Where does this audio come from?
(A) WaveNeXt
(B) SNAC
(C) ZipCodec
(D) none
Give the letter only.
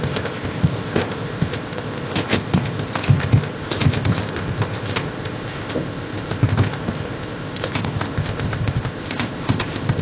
C